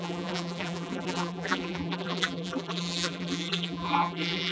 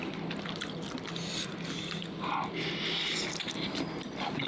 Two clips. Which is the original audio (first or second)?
second